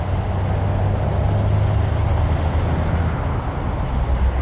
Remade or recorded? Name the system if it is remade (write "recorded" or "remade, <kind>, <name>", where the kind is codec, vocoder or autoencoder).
recorded